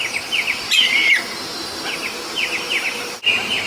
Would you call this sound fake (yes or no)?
no